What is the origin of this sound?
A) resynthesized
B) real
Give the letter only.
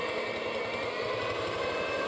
B